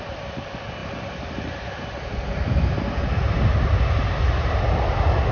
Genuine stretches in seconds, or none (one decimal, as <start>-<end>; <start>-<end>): 0.0-5.3